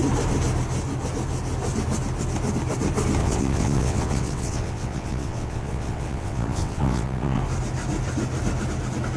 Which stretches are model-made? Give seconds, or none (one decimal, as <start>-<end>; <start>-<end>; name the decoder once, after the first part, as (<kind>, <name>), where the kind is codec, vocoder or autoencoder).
3.2-7.4 (vocoder, WaveNeXt)